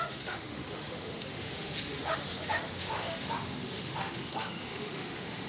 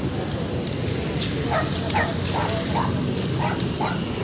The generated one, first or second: first